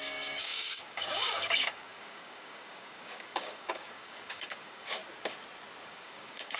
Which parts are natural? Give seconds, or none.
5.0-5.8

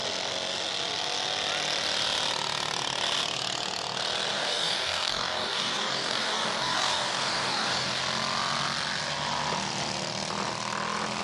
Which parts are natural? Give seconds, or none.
0.0-4.3; 8.0-11.2

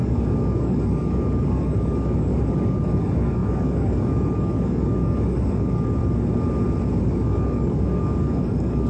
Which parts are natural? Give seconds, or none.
6.0-7.0

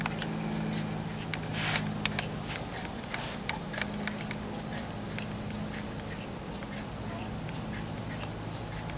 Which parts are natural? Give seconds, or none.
0.0-9.0

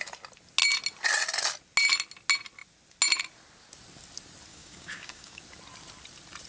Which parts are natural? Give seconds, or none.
0.0-4.5; 5.4-6.5

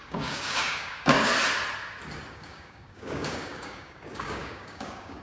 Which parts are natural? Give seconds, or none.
1.3-2.3